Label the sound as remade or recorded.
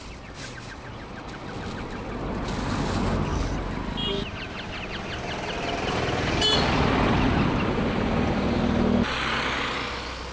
recorded